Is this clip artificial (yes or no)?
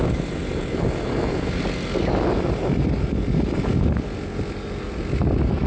no